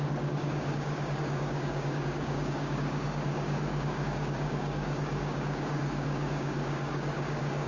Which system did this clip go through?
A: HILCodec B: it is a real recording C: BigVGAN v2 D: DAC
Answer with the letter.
D